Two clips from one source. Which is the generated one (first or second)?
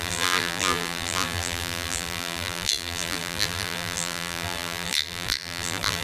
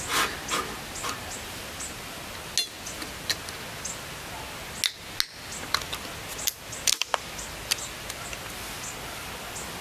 first